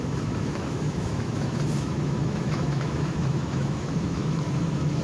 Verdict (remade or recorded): remade